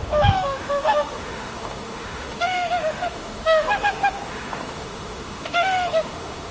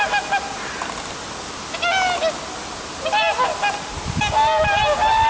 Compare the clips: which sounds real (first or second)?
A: second